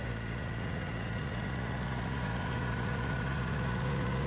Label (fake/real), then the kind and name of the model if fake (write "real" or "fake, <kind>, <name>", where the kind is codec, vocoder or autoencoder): fake, vocoder, Vocos